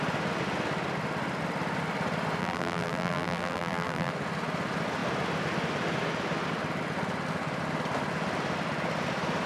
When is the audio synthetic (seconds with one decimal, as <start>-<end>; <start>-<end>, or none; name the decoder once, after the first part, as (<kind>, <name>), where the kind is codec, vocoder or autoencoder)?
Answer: 2.4-4.1 (vocoder, BigVGAN v2)